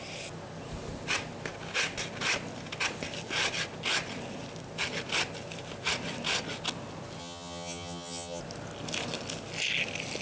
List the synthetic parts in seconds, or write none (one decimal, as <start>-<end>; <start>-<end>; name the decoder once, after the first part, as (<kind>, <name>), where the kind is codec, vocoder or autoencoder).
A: 7.2-8.4 (vocoder, HiFi-GAN)